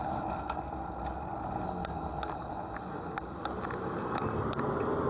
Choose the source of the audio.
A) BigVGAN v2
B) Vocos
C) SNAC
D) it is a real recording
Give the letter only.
D